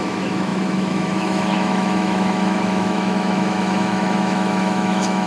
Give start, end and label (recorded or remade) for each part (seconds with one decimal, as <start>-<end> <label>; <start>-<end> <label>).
0.0-5.3 remade